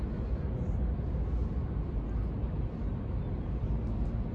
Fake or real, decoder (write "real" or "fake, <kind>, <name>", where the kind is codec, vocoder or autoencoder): real